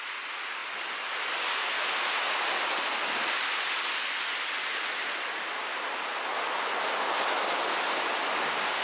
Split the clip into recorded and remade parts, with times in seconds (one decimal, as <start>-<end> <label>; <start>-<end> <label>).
0.0-8.8 recorded